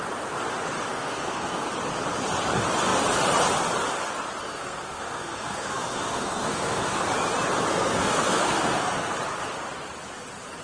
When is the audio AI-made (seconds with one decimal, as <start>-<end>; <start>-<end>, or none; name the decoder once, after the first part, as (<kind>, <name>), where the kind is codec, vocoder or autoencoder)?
0.9-1.7 (codec, SNAC); 4.4-7.0; 7.7-9.1